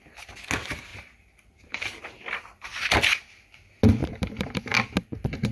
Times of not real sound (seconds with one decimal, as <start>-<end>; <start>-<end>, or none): 0.9-2.0; 4.0-4.6